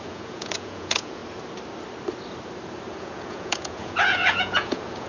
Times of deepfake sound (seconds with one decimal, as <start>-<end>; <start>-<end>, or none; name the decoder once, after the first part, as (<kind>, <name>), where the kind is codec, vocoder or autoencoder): 0.0-1.2 (vocoder, Vocos); 2.9-5.1